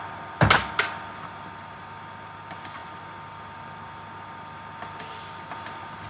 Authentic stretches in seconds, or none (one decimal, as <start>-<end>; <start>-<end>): 0.0-6.1